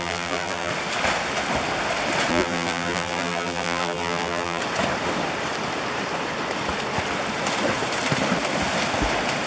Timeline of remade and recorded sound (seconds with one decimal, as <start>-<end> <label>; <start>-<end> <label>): 0.0-0.7 remade; 0.7-2.3 recorded; 2.3-4.6 remade; 4.6-9.5 recorded